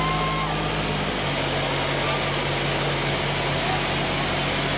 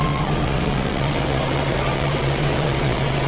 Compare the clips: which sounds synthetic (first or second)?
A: second